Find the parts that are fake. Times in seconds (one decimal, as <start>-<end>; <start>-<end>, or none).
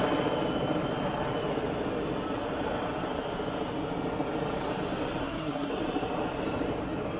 5.2-5.7